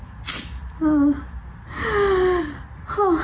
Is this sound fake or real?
real